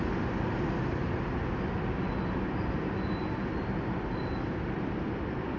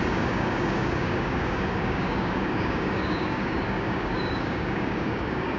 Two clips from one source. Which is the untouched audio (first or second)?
first